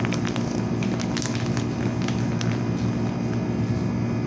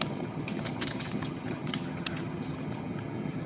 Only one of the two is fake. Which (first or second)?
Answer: second